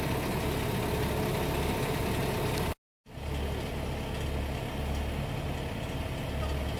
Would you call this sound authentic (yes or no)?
yes